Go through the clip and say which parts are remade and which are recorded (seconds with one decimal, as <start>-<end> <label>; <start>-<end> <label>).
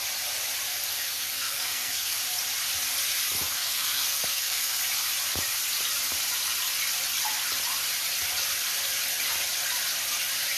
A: 0.0-0.9 recorded; 0.9-2.2 remade; 2.2-3.5 recorded; 3.5-4.8 remade; 4.8-10.6 recorded